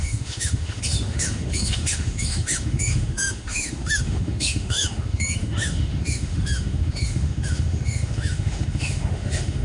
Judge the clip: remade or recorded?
remade